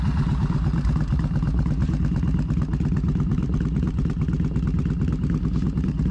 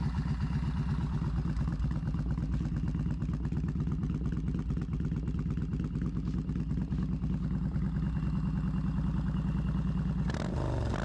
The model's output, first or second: first